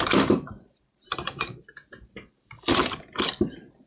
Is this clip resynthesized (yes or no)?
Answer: yes